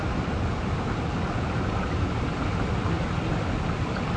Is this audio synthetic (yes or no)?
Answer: no